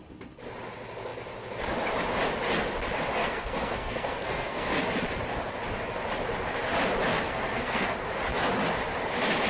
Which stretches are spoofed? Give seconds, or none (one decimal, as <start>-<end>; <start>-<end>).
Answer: 3.2-4.8; 7.1-7.9